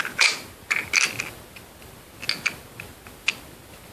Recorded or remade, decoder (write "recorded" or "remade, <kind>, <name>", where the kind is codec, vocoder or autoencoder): recorded